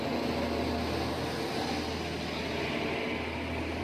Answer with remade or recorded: recorded